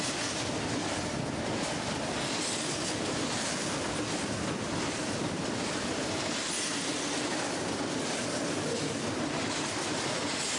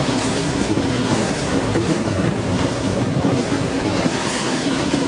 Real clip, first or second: first